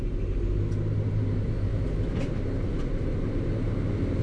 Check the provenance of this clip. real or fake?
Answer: real